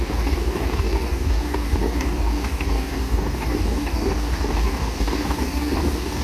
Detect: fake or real fake